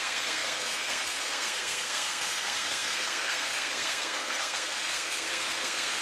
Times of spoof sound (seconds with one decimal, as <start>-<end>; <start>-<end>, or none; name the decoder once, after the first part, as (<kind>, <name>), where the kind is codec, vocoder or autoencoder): 0.0-6.0 (codec, SNAC)

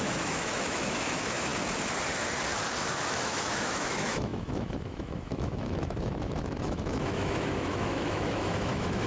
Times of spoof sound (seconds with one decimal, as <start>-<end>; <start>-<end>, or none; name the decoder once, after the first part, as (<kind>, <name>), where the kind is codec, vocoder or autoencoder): 0.0-1.5 (autoencoder, DAC-VAE); 2.9-9.1

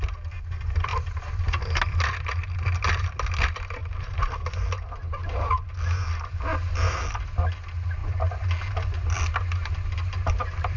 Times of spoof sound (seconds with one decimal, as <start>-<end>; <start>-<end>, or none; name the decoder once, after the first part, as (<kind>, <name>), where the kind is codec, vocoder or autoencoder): none

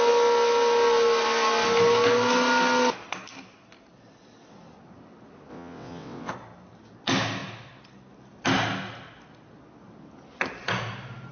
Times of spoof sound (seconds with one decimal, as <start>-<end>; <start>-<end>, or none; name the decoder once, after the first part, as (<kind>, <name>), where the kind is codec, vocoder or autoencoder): 5.5-6.3 (vocoder, WaveNeXt)